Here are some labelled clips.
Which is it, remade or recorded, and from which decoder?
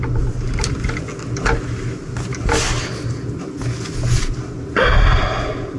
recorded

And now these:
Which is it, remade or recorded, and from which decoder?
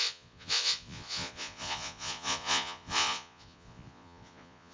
remade, vocoder, Vocos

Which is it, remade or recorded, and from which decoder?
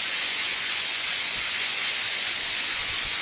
remade, vocoder, Vocos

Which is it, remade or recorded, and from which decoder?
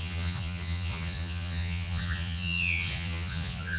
remade, vocoder, Vocos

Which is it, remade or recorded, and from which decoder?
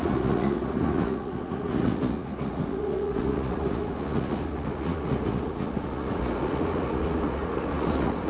remade, vocoder, Vocos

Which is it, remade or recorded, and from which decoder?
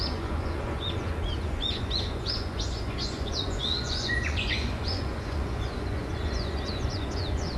remade, vocoder, Vocos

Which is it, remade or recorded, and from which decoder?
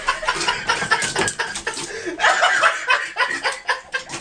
recorded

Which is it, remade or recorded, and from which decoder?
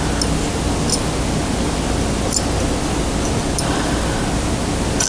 recorded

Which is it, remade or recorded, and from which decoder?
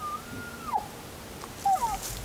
recorded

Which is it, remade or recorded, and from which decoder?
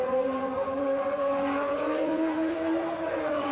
remade, vocoder, Vocos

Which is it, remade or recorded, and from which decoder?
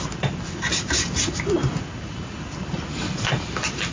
recorded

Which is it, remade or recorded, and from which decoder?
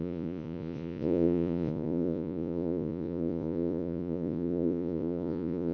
remade, vocoder, Vocos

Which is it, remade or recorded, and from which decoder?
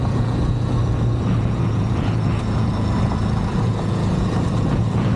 remade, vocoder, Vocos